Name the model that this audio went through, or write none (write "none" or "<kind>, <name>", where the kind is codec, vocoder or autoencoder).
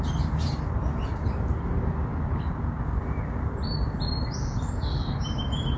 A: none